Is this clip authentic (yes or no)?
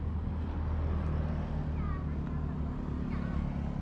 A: yes